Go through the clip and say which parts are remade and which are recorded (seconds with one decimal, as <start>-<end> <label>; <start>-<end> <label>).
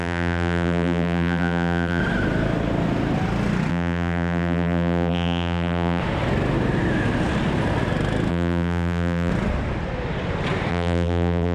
0.0-2.0 remade; 2.0-3.7 recorded; 3.7-6.0 remade; 6.0-8.3 recorded; 8.3-9.3 remade; 9.3-10.7 recorded; 10.7-11.5 remade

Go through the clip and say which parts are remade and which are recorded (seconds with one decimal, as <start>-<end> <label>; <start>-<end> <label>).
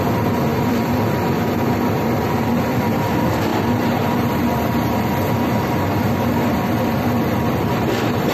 0.0-8.3 remade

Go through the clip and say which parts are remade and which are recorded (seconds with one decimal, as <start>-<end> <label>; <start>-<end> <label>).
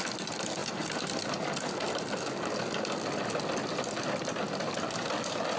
0.0-0.6 recorded; 0.6-1.2 remade; 1.2-5.6 recorded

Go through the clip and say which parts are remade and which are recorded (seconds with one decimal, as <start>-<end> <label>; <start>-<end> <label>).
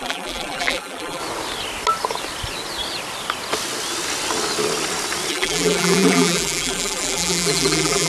0.0-1.2 remade; 1.2-5.3 recorded; 5.3-8.1 remade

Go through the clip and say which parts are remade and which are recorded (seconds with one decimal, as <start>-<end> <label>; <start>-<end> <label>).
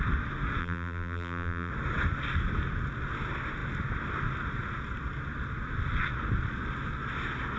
0.0-0.6 recorded; 0.6-1.7 remade; 1.7-7.6 recorded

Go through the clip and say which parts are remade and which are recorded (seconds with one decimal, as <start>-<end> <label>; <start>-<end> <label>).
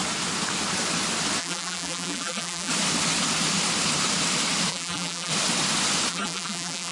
0.0-1.4 recorded; 1.4-2.7 remade; 2.7-4.7 recorded; 4.7-5.3 remade; 5.3-6.1 recorded; 6.1-6.9 remade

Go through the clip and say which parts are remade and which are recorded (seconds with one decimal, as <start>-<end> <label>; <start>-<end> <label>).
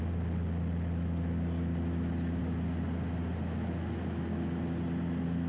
0.0-5.5 recorded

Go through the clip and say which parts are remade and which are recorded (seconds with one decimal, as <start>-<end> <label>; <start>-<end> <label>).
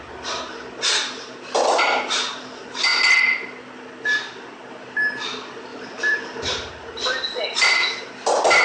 0.0-5.7 recorded; 5.7-6.7 remade; 6.7-8.6 recorded